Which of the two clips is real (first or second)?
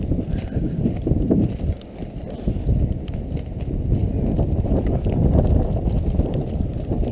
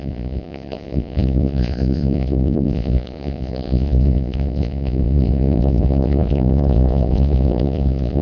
first